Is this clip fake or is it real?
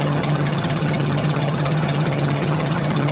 fake